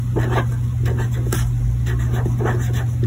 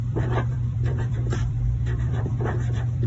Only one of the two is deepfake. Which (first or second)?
second